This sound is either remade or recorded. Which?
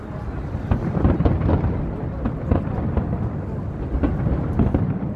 recorded